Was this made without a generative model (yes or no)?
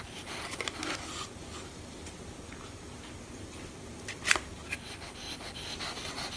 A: yes